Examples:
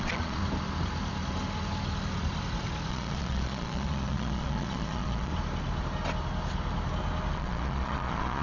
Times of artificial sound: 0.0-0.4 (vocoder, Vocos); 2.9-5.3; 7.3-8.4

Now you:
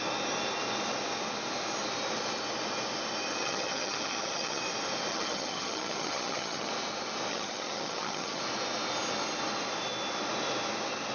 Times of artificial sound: 3.3-4.6 (vocoder, HiFi-GAN); 5.1-6.7; 7.3-8.4

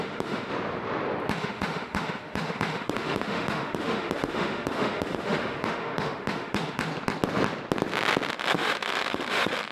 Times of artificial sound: 0.0-0.5 (autoencoder, DAC-VAE); 1.3-6.9; 8.3-9.7

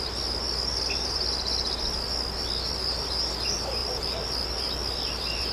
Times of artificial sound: 3.8-4.5 (vocoder, BigVGAN v2)